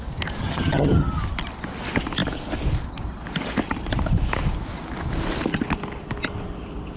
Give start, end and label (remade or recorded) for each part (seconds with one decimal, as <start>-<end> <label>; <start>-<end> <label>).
0.0-0.4 recorded; 0.4-1.2 remade; 1.2-7.0 recorded